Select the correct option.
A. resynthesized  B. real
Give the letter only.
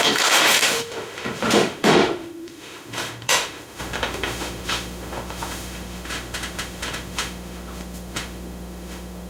A